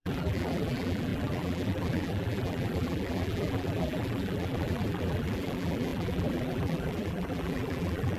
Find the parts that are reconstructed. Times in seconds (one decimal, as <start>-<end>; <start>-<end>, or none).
0.0-8.2